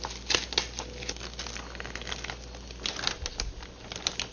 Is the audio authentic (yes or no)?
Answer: yes